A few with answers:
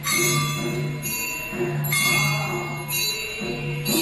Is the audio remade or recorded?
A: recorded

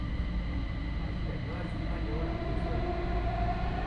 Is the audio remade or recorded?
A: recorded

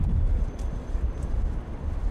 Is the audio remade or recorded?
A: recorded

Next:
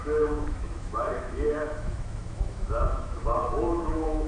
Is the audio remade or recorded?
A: remade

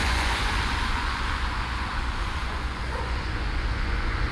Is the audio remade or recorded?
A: remade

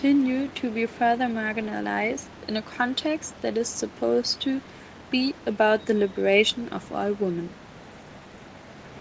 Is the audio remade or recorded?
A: recorded